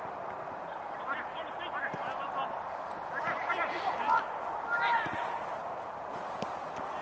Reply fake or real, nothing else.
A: real